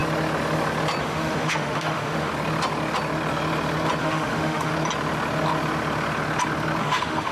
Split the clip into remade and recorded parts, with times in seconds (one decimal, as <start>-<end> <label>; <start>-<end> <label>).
0.0-1.0 recorded; 1.0-2.3 remade; 2.3-4.0 recorded; 4.0-4.7 remade; 4.7-6.8 recorded; 6.8-7.3 remade